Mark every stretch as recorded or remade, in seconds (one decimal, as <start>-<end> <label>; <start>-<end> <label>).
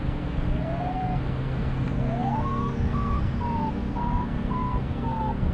0.0-5.5 remade